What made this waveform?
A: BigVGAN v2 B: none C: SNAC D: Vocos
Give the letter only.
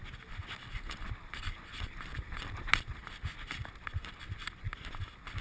B